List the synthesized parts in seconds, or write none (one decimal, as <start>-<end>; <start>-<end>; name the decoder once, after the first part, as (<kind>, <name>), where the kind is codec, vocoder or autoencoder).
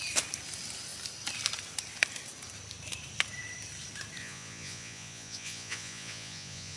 4.2-6.8 (vocoder, Vocos)